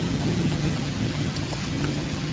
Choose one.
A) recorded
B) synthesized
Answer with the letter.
B